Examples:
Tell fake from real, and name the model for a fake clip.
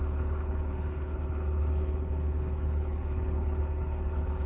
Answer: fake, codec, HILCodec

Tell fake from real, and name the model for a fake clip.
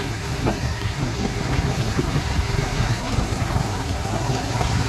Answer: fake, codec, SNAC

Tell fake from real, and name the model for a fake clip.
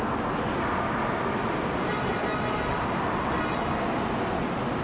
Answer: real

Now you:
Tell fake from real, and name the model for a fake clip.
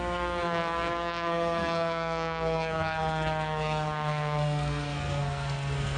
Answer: fake, codec, SNAC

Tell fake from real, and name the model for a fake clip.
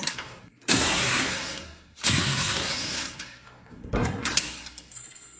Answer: fake, codec, SNAC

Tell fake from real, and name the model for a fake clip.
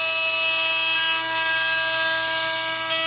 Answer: real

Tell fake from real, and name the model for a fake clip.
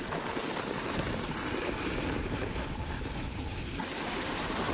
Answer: real